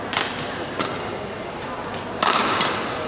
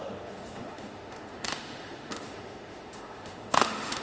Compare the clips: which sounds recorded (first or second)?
first